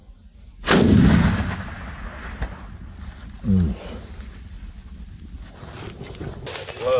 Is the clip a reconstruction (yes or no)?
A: no